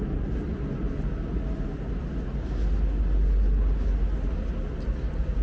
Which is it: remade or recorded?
recorded